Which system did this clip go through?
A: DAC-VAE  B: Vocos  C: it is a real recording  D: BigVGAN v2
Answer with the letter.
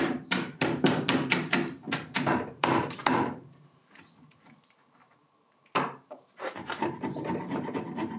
D